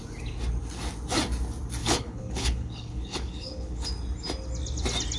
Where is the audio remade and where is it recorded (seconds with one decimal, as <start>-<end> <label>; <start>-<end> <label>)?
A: 0.0-1.8 recorded; 1.8-3.9 remade; 3.9-5.2 recorded

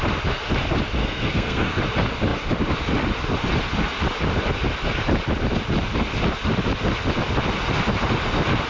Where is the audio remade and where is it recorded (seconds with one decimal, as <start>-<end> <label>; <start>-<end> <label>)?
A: 0.0-1.0 recorded; 1.0-1.8 remade; 1.8-8.7 recorded

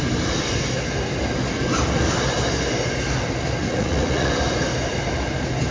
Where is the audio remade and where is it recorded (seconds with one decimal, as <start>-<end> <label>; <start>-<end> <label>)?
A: 0.0-3.6 recorded; 3.6-4.3 remade; 4.3-5.7 recorded

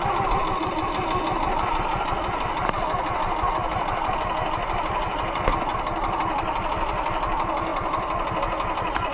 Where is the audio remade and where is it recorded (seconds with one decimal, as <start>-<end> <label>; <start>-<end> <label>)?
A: 0.0-9.1 recorded

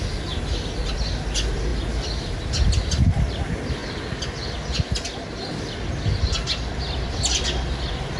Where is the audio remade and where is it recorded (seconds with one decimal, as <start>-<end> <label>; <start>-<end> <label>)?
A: 0.0-8.2 recorded

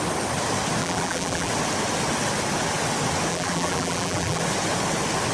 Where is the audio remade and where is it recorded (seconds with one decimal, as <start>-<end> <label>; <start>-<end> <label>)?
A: 0.0-0.8 recorded; 0.8-1.5 remade; 1.5-3.3 recorded; 3.3-4.4 remade; 4.4-5.3 recorded

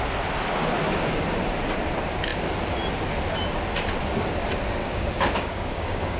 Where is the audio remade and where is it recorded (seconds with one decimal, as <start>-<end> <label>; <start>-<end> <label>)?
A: 0.0-4.8 recorded; 4.8-6.2 remade